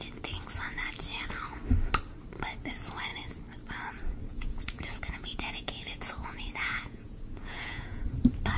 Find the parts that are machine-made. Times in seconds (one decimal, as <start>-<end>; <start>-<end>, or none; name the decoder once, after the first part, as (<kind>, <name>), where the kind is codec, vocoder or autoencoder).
4.3-8.1 (vocoder, Vocos)